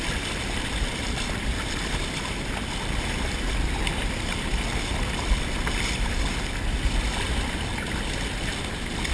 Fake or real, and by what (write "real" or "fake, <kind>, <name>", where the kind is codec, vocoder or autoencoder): real